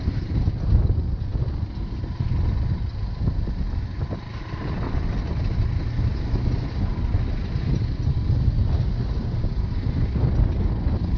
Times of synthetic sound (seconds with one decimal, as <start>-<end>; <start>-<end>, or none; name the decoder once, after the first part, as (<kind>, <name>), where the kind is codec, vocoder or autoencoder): none